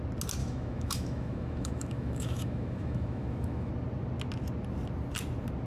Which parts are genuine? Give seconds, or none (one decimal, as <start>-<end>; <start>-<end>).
0.0-0.4; 3.7-5.7